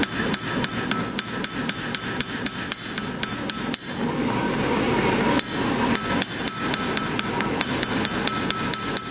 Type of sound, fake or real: real